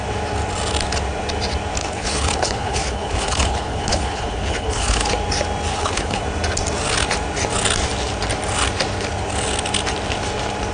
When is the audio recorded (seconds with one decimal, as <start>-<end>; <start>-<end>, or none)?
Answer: 0.0-1.8; 5.1-5.7; 6.2-10.7